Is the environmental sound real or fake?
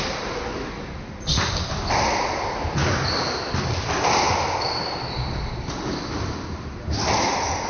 real